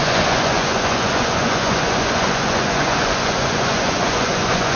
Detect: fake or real fake